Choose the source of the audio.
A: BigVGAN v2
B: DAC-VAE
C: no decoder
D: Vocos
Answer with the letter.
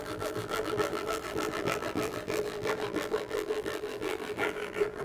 A